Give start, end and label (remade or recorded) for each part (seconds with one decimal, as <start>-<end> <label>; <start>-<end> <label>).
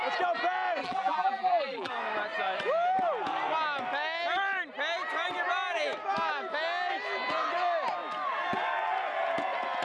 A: 0.0-0.8 recorded; 0.8-1.9 remade; 1.9-9.8 recorded